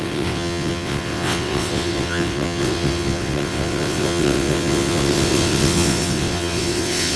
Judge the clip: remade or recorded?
remade